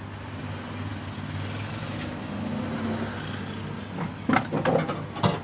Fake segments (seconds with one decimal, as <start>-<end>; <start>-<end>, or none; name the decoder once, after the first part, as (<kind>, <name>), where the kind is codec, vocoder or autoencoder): none